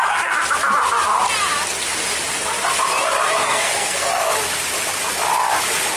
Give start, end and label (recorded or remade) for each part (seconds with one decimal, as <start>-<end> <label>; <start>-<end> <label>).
0.0-3.4 recorded; 3.4-4.3 remade; 4.3-6.0 recorded